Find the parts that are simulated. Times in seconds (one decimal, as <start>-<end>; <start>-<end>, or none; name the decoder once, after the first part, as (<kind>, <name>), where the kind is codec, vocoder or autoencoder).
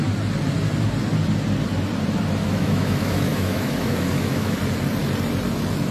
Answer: 2.4-4.6 (autoencoder, DAC-VAE)